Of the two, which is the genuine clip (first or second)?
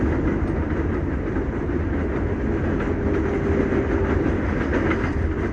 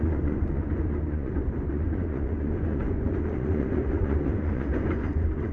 first